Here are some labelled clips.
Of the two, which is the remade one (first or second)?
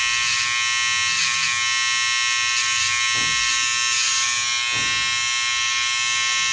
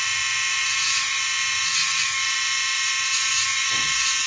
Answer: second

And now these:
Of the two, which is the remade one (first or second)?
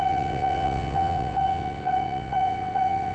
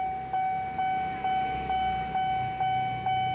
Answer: first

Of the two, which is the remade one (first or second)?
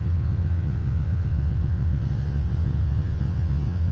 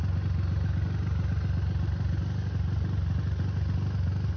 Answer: first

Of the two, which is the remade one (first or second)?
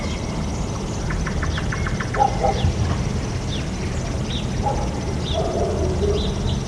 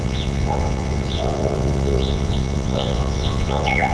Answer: second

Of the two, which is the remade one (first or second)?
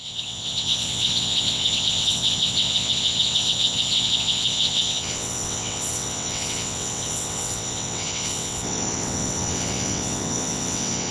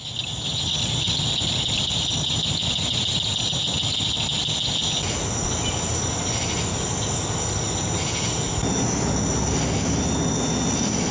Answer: first